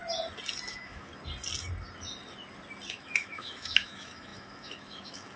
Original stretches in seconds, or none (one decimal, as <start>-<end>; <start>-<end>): 0.0-0.7; 1.1-2.9